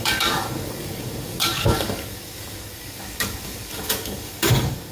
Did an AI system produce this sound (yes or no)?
yes